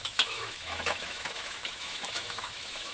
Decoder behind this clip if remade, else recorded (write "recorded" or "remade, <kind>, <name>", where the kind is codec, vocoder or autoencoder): remade, autoencoder, DAC-VAE